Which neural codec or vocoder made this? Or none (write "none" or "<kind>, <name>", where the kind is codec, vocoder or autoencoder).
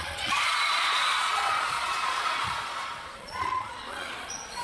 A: vocoder, Vocos